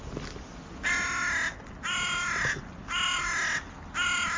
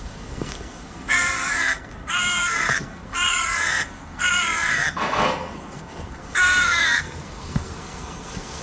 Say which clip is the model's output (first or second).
second